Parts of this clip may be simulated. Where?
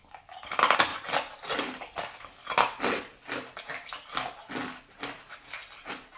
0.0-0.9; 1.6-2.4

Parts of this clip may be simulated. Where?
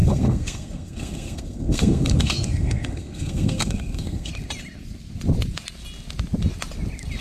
0.0-4.3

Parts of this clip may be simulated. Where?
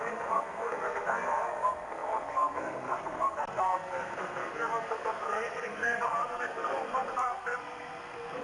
0.0-8.4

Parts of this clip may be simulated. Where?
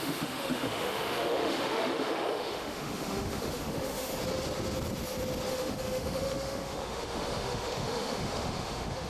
0.0-4.1; 5.5-9.1